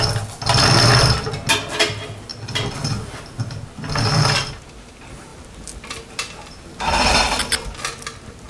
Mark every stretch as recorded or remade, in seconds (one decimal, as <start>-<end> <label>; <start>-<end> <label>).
0.0-8.5 recorded